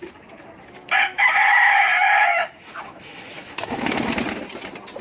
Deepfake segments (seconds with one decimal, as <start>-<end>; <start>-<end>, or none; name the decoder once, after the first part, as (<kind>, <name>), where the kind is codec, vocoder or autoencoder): 1.1-4.1 (autoencoder, DAC-VAE)